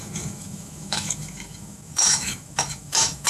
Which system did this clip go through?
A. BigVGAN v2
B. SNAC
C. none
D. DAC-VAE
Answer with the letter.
D